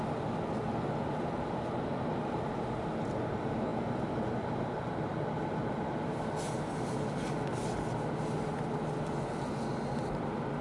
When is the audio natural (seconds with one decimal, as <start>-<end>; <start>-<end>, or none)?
0.0-10.6